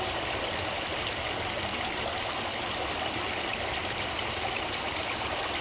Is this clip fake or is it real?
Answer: real